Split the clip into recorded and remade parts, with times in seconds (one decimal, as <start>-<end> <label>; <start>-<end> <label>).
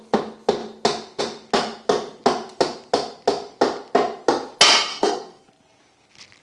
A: 0.0-4.9 recorded; 4.9-5.5 remade; 5.5-6.4 recorded